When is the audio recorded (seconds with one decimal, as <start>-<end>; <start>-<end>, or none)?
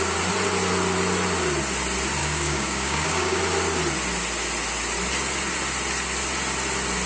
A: 0.0-2.2; 3.4-7.1